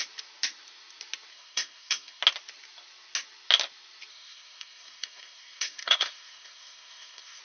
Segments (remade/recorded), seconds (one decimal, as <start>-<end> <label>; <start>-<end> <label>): 0.0-1.3 recorded; 1.3-2.2 remade; 2.2-4.1 recorded; 4.1-7.4 remade